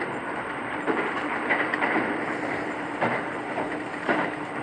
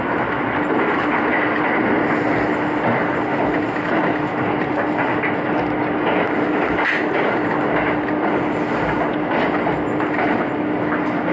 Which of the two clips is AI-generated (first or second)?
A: first